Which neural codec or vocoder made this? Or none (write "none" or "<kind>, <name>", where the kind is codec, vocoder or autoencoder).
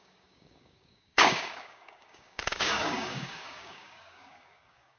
codec, DAC